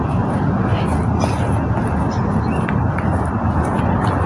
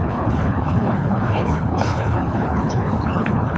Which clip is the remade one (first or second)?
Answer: second